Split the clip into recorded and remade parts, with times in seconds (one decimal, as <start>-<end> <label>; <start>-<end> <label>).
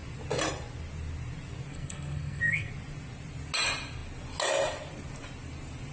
0.0-1.7 recorded; 1.7-2.7 remade; 2.7-5.9 recorded